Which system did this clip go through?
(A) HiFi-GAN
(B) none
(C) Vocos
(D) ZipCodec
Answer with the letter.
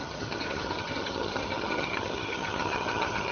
A